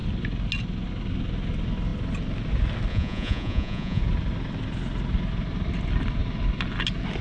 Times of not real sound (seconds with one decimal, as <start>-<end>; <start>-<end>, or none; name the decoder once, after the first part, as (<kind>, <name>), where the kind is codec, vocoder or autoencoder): 2.9-4.0 (vocoder, Vocos)